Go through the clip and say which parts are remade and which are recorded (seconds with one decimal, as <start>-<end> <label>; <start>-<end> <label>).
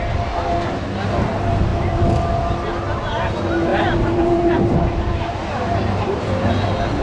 0.0-3.7 recorded; 3.7-6.5 remade; 6.5-7.0 recorded